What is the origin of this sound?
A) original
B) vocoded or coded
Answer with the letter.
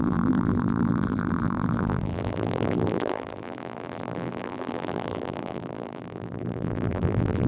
B